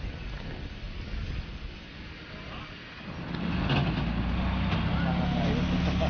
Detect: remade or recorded recorded